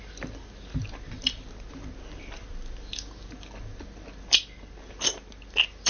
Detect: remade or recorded recorded